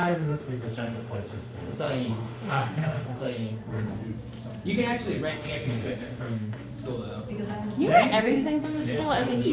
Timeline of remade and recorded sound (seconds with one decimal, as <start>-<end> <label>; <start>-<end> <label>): 0.0-3.9 remade; 3.9-5.3 recorded; 5.3-6.7 remade; 6.7-8.2 recorded; 8.2-9.5 remade